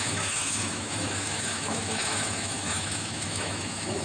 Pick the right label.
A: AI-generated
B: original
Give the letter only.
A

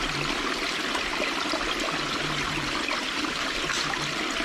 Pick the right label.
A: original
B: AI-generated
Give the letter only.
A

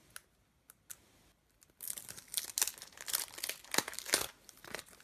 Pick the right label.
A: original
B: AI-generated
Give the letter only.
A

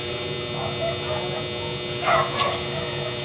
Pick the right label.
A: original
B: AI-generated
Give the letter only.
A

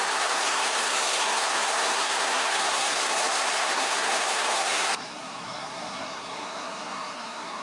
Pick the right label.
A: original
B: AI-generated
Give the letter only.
B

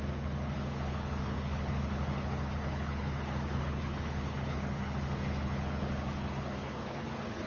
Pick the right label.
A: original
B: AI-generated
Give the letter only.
B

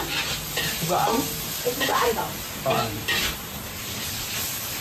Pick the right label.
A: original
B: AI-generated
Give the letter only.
A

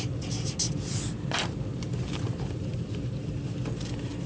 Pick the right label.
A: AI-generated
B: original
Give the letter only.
B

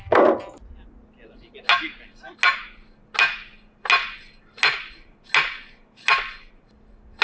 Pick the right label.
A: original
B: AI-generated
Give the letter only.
A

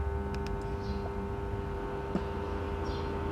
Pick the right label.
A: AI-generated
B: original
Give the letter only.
B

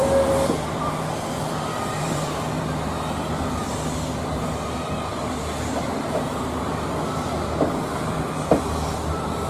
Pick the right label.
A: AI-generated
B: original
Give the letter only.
A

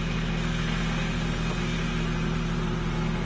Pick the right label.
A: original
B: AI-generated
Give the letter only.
A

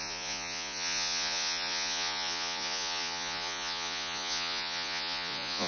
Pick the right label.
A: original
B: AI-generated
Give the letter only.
B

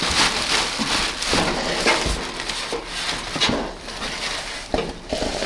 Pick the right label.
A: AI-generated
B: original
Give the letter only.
B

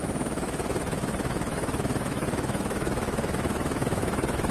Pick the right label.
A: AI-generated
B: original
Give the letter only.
A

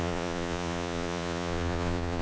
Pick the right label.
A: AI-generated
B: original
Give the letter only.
A